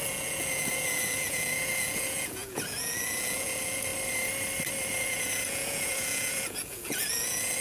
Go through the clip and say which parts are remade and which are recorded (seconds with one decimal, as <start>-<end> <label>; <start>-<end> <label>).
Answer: 0.0-3.9 remade; 3.9-4.9 recorded; 4.9-7.6 remade